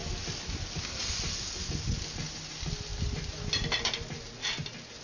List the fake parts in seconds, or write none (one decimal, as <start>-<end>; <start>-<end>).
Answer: none